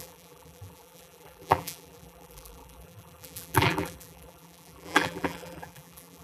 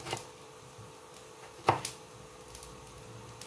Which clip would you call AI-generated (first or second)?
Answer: first